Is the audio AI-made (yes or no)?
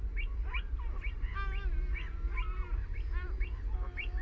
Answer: no